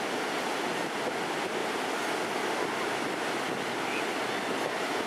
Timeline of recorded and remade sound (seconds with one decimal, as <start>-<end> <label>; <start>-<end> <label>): 0.0-5.1 recorded